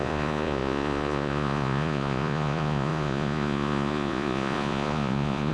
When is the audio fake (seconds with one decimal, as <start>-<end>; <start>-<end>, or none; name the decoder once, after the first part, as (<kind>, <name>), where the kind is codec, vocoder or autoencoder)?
0.0-5.5 (vocoder, Vocos)